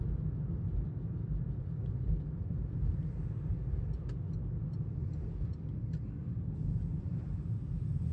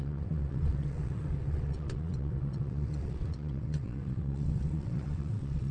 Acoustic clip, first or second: first